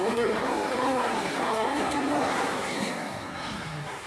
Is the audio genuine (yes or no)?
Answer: no